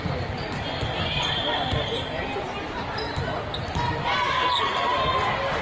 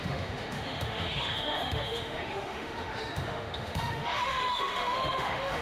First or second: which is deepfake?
second